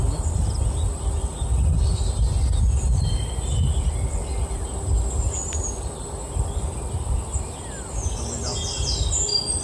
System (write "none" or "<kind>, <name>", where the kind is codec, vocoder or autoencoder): none